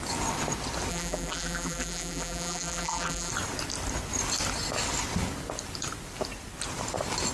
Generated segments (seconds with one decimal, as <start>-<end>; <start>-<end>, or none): 0.9-3.3